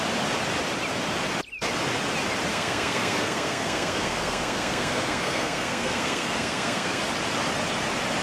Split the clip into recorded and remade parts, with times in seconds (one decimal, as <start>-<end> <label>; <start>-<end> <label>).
0.0-2.5 recorded; 2.5-7.0 remade; 7.0-8.2 recorded